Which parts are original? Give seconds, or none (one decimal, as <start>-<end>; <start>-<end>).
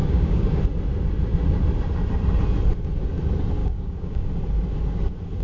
0.6-3.6; 4.3-5.4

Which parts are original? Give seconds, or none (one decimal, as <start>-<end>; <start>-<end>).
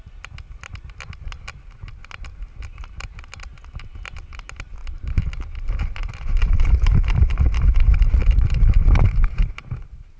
0.0-4.8; 5.3-6.4; 7.3-10.2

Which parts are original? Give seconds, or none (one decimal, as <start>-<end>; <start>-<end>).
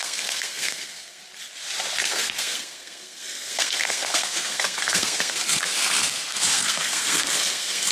1.2-2.0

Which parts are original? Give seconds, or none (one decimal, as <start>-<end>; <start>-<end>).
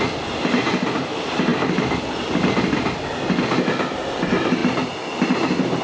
0.0-5.8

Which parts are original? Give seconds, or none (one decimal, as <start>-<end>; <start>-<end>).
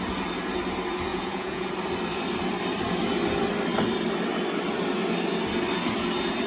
0.0-1.1; 1.7-6.5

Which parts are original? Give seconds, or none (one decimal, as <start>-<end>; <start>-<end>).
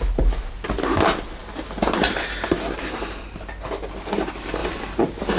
0.0-5.4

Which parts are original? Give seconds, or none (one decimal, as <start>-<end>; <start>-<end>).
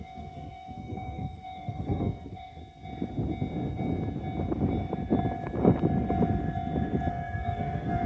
2.6-7.1